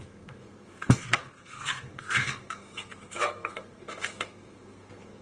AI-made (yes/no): yes